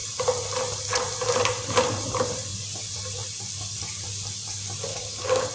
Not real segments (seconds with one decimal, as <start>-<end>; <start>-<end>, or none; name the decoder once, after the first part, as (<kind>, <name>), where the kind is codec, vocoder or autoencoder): 4.9-5.5 (codec, DAC)

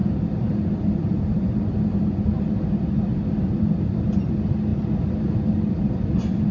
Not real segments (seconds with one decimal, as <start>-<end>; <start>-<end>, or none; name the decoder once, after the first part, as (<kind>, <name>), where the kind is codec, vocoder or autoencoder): none

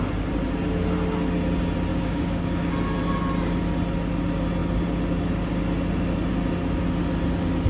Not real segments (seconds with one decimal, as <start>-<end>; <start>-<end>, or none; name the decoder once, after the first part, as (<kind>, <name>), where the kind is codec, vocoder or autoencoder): 1.9-2.7 (codec, DAC)